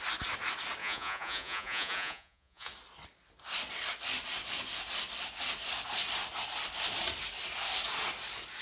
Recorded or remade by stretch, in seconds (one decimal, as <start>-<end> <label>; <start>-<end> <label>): 0.0-0.8 recorded; 0.8-2.7 remade; 2.7-8.6 recorded